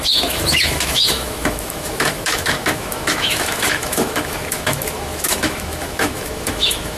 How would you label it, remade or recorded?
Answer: remade